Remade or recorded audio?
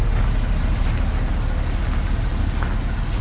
recorded